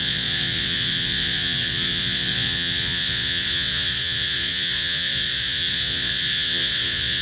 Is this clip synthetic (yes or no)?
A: yes